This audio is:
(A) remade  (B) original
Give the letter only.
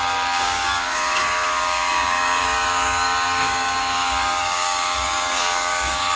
A